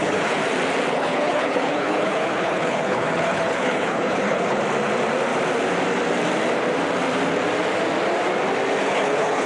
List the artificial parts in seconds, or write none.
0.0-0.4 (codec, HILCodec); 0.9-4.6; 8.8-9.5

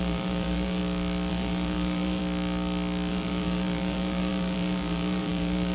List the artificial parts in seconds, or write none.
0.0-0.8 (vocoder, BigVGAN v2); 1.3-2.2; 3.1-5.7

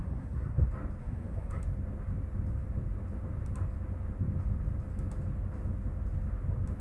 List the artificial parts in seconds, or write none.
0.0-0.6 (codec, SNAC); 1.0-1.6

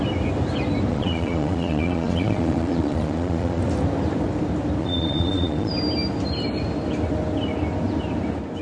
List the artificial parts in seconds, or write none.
0.9-3.6 (vocoder, Vocos); 4.8-5.7

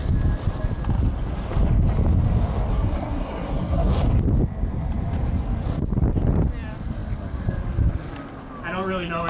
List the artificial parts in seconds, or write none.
2.7-3.9 (codec, SNAC)

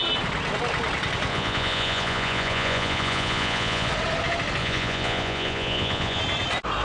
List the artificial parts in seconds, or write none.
1.3-3.9 (vocoder, Vocos); 4.6-6.2

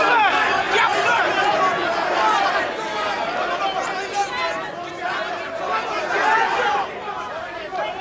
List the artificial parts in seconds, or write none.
0.9-1.5 (vocoder, BigVGAN v2)